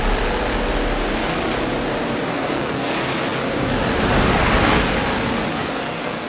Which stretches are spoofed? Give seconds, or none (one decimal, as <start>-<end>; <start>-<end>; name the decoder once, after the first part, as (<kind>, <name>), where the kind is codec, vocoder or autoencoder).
2.3-2.9 (codec, SNAC); 5.5-6.3